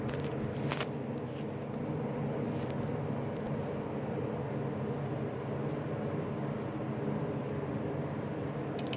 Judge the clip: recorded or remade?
recorded